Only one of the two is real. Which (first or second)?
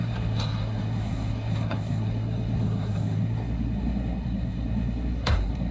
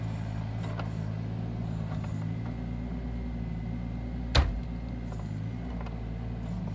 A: second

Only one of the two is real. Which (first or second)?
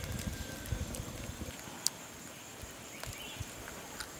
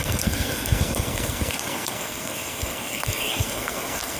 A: first